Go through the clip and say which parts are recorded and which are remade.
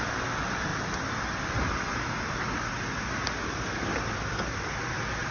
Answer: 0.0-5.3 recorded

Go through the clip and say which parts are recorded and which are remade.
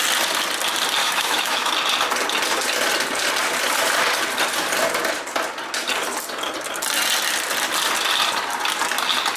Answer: 0.0-1.0 recorded; 1.0-1.7 remade; 1.7-9.4 recorded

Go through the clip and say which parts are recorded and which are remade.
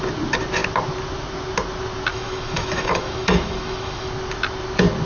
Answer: 0.0-2.1 recorded; 2.1-4.1 remade; 4.1-5.1 recorded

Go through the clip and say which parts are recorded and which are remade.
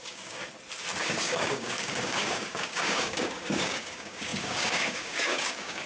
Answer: 0.0-0.4 remade; 0.4-1.0 recorded; 1.0-5.9 remade